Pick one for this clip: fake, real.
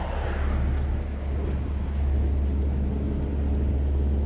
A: real